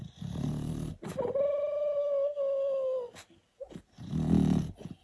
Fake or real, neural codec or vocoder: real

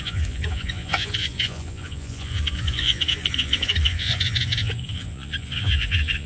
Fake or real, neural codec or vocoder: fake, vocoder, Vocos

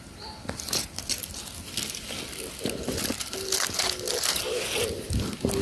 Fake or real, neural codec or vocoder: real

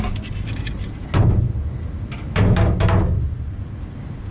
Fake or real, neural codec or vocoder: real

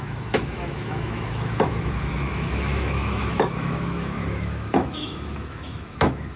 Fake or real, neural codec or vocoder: fake, autoencoder, DAC-VAE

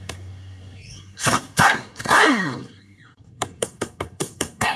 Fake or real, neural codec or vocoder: fake, codec, SNAC